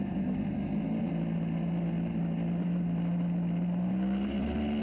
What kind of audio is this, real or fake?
real